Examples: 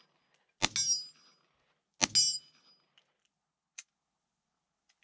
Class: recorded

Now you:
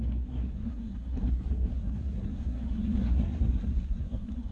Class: remade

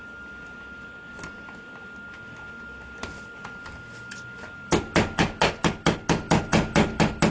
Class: recorded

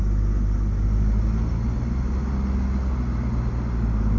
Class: recorded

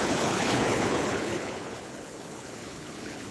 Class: remade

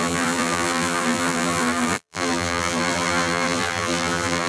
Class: remade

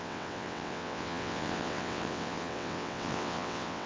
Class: remade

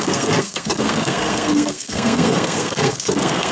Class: remade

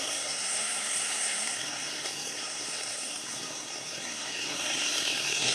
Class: remade